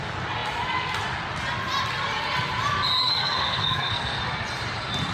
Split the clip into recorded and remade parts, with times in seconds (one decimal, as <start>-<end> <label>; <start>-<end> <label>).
0.0-3.0 recorded; 3.0-4.2 remade; 4.2-5.1 recorded